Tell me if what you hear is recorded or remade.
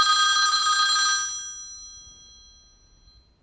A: recorded